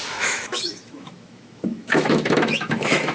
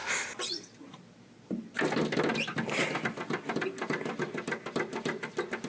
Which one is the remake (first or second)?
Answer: first